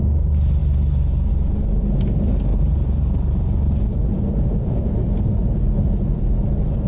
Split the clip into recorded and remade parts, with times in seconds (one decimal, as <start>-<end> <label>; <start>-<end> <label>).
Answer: 0.0-2.5 recorded; 2.5-6.2 remade; 6.2-6.9 recorded